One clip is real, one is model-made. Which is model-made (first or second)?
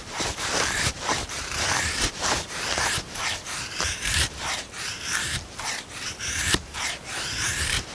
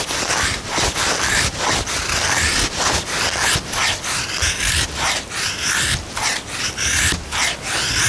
first